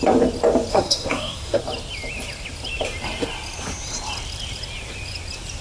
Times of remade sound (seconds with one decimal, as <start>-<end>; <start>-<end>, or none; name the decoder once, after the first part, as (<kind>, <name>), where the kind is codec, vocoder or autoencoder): 0.7-1.6 (codec, SNAC)